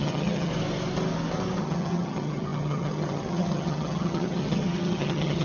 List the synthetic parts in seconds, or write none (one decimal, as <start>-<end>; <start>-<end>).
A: 0.0-0.5; 1.6-5.4